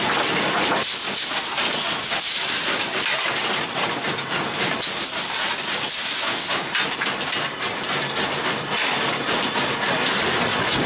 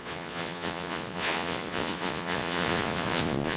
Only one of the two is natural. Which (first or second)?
first